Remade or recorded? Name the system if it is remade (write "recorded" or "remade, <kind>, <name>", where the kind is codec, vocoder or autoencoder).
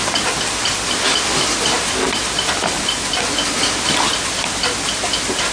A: recorded